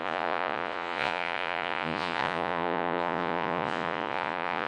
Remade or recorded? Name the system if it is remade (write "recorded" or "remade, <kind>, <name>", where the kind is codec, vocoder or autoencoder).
remade, vocoder, Vocos